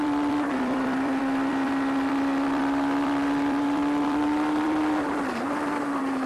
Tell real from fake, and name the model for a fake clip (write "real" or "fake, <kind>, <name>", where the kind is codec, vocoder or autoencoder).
fake, vocoder, BigVGAN v2